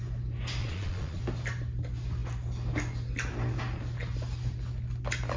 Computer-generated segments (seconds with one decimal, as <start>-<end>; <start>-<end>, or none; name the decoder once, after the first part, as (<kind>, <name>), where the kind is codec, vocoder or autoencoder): 0.6-1.2 (vocoder, Vocos)